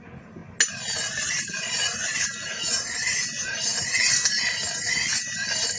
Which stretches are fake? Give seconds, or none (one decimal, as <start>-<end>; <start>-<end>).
none